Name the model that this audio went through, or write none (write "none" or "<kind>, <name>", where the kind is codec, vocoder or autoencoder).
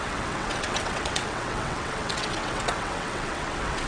vocoder, WaveNeXt